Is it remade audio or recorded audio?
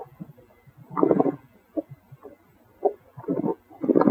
recorded